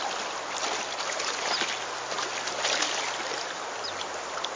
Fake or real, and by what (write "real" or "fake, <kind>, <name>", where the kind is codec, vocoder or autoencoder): real